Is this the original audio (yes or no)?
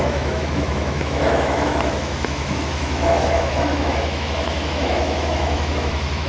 no